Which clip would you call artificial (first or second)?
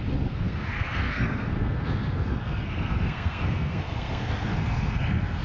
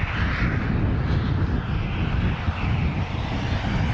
first